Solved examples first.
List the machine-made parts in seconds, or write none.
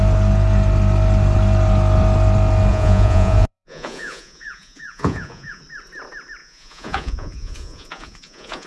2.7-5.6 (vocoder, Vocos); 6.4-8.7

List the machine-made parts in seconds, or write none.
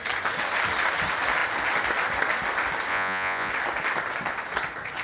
2.9-3.5 (vocoder, Vocos)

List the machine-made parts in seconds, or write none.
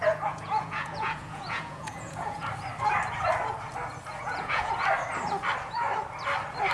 0.0-2.5 (vocoder, Vocos); 4.1-4.7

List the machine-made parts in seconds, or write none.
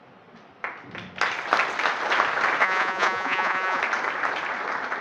2.6-3.8 (vocoder, Vocos)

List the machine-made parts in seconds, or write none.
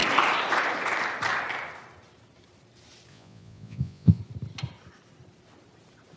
3.1-4.2 (vocoder, Vocos)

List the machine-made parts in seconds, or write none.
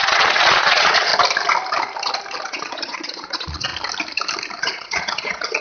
0.0-1.1 (vocoder, Vocos); 2.5-3.7; 4.6-5.6